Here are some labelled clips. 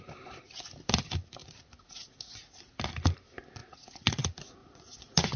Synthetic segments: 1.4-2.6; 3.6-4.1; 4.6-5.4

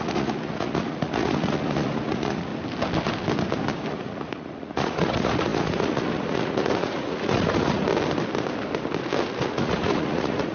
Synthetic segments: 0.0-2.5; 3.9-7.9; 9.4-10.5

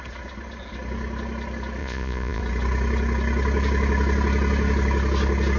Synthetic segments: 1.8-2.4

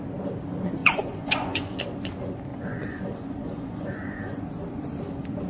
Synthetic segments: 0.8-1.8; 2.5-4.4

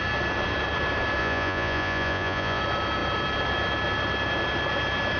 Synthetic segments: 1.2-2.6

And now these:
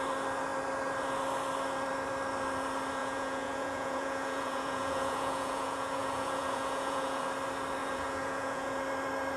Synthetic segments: 3.0-7.3; 7.8-8.8